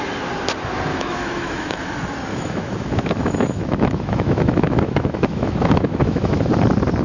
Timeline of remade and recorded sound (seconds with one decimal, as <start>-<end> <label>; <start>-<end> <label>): 0.0-0.9 recorded; 0.9-1.8 remade; 1.8-2.3 recorded; 2.3-6.5 remade; 6.5-7.0 recorded